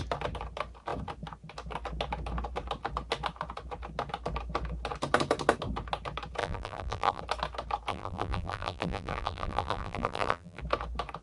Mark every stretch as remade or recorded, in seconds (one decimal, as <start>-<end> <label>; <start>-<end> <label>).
0.0-6.4 recorded; 6.4-7.2 remade; 7.2-7.9 recorded; 7.9-10.6 remade; 10.6-11.2 recorded